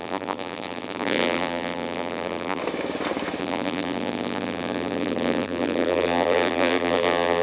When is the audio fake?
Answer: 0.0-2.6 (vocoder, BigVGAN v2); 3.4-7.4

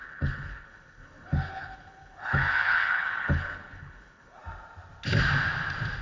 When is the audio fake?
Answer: 0.0-4.4 (codec, HILCodec)

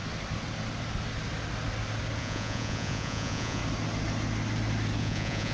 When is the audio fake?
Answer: 2.2-3.6 (vocoder, Vocos); 5.0-5.5

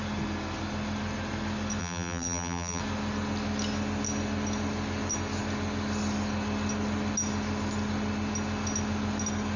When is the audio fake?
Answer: 1.8-2.8 (vocoder, BigVGAN v2)